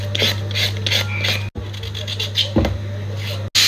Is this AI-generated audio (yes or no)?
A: no